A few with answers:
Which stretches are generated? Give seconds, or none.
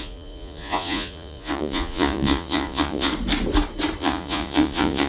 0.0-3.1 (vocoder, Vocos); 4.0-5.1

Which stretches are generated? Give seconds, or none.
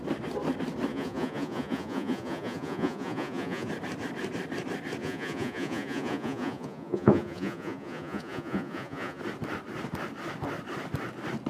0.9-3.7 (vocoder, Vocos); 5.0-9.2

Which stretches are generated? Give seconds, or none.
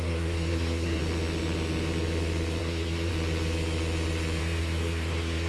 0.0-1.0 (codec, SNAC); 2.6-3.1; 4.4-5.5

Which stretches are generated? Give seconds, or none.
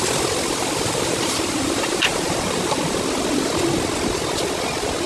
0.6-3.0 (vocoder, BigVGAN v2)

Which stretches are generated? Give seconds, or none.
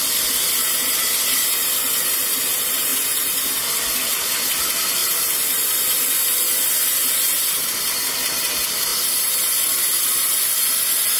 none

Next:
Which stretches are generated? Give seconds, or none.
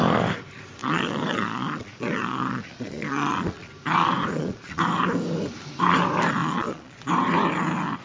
0.8-3.7 (vocoder, Vocos); 4.3-4.8; 6.4-7.1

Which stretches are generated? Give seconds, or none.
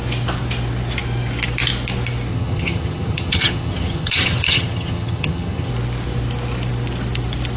2.3-5.7 (vocoder, HiFi-GAN)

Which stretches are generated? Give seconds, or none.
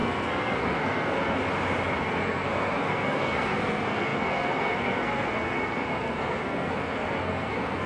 0.0-1.4 (codec, SNAC); 2.0-7.9